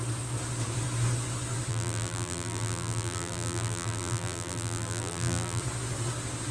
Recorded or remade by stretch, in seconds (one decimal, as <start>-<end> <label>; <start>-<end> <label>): 0.0-1.7 recorded; 1.7-5.6 remade; 5.6-6.5 recorded